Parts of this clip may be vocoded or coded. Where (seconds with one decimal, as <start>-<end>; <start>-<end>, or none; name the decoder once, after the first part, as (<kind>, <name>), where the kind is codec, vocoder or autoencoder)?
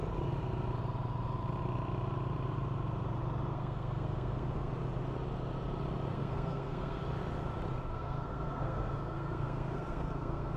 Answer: 3.5-4.7 (codec, SNAC); 6.1-7.0; 7.9-10.6